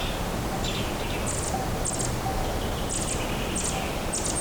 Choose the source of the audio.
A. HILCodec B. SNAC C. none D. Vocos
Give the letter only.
C